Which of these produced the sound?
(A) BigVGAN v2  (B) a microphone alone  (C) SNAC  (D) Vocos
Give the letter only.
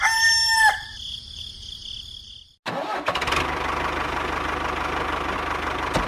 B